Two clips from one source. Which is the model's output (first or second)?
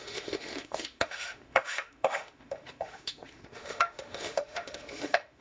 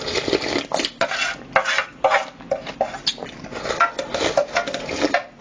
first